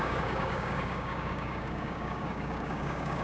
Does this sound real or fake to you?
fake